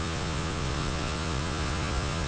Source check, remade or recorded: remade